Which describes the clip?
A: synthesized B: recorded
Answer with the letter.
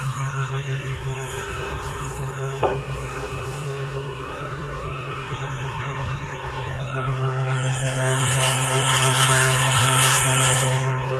A